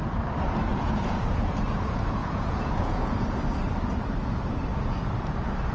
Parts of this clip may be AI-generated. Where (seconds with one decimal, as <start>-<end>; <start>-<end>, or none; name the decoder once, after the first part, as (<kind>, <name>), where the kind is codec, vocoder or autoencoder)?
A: 0.7-1.6 (vocoder, Vocos); 2.2-3.2